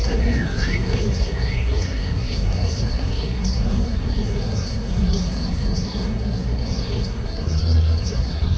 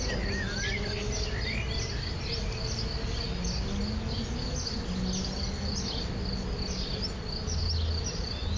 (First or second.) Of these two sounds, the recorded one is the second